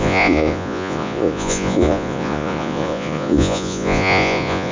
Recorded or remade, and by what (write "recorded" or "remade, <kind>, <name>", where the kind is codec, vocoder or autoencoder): remade, vocoder, Vocos